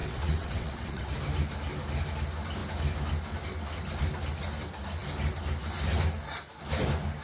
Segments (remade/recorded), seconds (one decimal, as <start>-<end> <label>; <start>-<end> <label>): 0.0-1.1 remade; 1.1-7.2 recorded